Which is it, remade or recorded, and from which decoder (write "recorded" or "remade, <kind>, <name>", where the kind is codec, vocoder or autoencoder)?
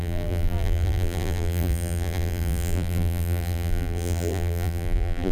remade, vocoder, BigVGAN v2